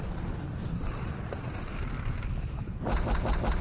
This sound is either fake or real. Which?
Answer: real